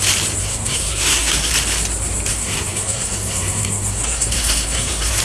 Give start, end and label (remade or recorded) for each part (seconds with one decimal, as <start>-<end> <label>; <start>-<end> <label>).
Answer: 0.0-0.4 recorded; 0.4-1.5 remade; 1.5-2.3 recorded; 2.3-5.2 remade